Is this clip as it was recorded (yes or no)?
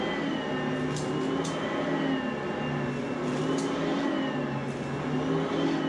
yes